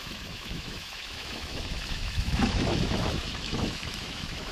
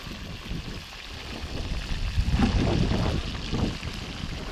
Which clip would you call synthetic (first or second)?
first